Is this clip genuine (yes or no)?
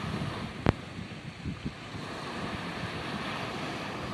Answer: yes